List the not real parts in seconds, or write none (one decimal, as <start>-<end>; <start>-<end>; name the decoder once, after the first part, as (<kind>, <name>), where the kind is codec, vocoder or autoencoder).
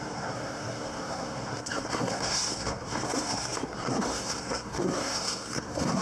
0.0-6.0 (codec, SNAC)